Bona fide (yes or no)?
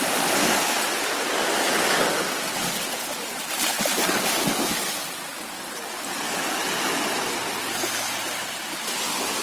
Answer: no